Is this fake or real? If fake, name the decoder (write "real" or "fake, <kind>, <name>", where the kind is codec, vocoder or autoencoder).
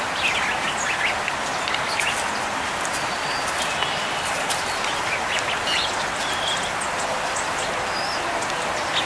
real